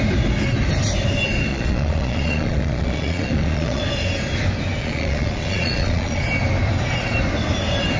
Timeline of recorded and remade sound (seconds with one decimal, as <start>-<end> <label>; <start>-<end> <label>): 0.0-1.5 recorded; 1.5-3.8 remade; 3.8-4.8 recorded; 4.8-6.2 remade; 6.2-8.0 recorded